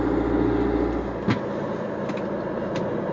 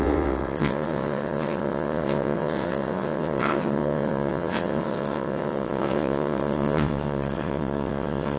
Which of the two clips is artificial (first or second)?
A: second